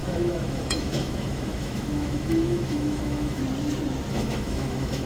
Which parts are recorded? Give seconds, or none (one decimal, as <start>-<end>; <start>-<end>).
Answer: 3.4-4.1